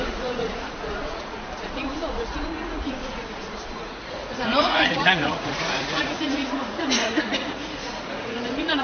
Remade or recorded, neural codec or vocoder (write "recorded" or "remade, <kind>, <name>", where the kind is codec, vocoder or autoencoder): remade, vocoder, Vocos